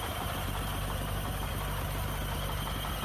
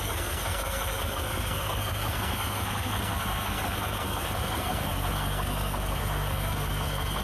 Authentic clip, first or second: first